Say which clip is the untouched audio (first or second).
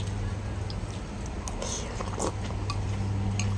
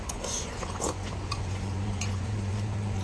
first